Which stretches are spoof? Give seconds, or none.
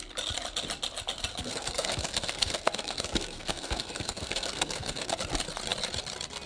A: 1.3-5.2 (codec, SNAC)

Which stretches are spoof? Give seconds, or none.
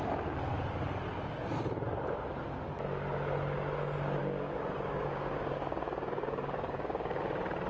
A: 4.2-7.2 (codec, DAC)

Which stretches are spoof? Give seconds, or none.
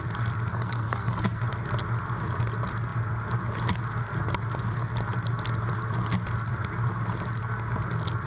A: 0.5-1.4 (codec, SNAC)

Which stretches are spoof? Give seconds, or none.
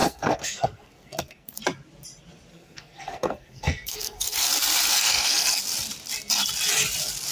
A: 0.0-1.6 (codec, SNAC); 2.5-4.5; 4.9-5.6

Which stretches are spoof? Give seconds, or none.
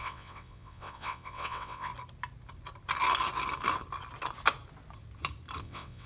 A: 0.0-1.9 (vocoder, WaveNeXt); 5.6-6.1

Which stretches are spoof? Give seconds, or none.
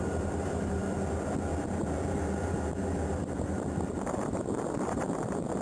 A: 0.0-0.8 (vocoder, BigVGAN v2); 4.1-5.6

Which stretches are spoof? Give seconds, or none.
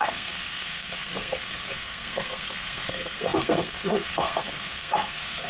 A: 0.0-5.5 (codec, SNAC)